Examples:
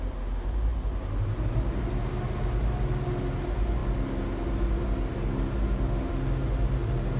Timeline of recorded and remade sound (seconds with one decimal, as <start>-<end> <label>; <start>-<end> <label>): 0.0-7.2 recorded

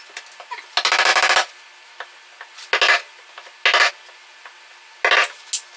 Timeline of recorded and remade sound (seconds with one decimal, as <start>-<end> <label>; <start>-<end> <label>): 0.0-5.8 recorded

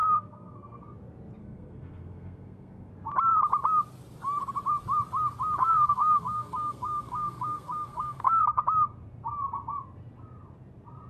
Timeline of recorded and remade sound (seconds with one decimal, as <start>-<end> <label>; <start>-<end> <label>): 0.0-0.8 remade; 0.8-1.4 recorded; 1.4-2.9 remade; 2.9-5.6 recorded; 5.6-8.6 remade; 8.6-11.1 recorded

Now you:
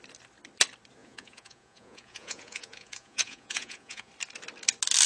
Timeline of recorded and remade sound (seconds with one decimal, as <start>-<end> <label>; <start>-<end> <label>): 0.0-1.0 recorded; 1.0-4.1 remade; 4.1-5.1 recorded

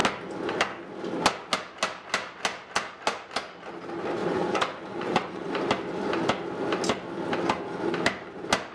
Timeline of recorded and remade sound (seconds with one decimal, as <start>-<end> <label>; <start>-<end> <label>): 0.0-4.2 recorded; 4.2-5.5 remade; 5.5-8.7 recorded

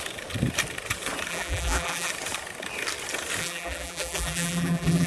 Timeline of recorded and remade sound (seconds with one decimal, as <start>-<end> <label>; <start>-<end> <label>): 0.0-1.3 recorded; 1.3-2.1 remade; 2.1-3.4 recorded; 3.4-5.1 remade